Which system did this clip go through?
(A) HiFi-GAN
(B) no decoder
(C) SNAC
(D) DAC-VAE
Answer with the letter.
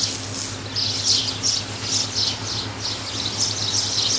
B